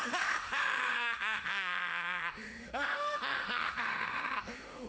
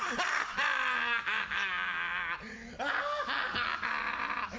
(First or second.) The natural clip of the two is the second